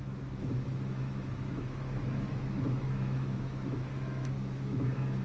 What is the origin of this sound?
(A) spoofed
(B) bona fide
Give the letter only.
A